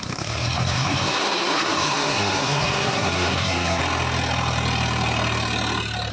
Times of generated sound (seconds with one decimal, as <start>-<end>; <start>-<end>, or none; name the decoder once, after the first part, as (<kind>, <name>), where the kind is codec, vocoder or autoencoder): 0.0-3.8 (codec, SNAC)